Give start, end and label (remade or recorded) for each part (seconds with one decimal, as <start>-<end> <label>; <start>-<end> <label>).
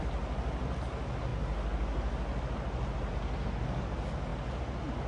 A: 0.0-5.1 recorded